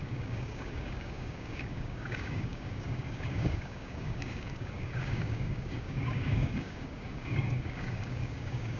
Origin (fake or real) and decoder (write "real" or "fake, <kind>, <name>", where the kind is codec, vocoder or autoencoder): fake, codec, DAC